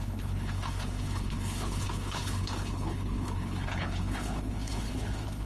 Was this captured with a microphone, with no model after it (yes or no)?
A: no